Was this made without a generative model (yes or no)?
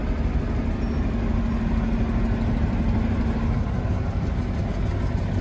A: yes